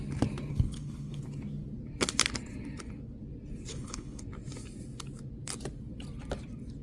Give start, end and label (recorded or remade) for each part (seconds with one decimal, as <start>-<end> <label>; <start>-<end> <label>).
0.0-0.5 recorded; 0.5-1.2 remade; 1.2-3.7 recorded; 3.7-4.2 remade; 4.2-6.8 recorded